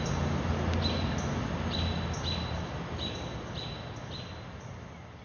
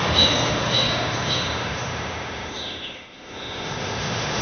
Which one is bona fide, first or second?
first